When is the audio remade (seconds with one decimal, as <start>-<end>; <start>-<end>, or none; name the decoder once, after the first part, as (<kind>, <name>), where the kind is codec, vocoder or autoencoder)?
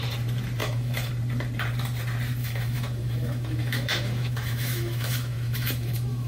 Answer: 0.6-1.1 (autoencoder, DAC-VAE); 2.4-6.3